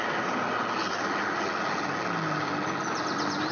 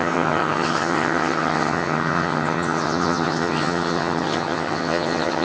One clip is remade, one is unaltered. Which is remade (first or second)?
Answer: second